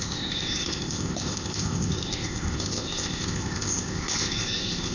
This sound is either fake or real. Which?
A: fake